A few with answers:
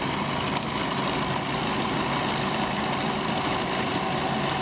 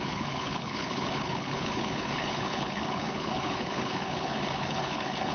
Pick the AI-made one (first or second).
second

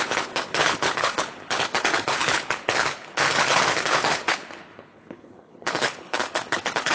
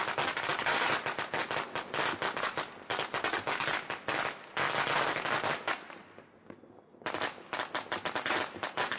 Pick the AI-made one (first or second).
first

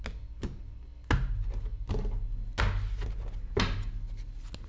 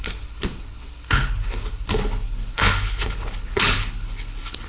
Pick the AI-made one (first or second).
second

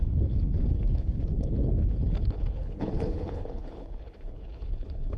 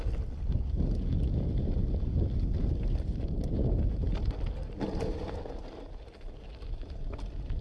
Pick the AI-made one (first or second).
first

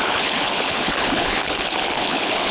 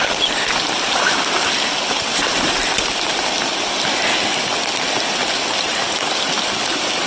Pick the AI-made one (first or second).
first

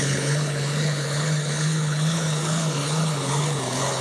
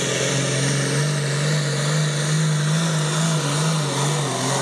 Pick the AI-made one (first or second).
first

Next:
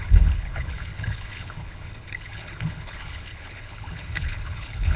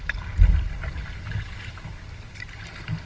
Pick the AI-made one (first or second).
first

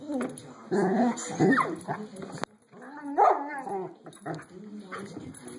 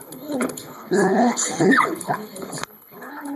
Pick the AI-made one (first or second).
second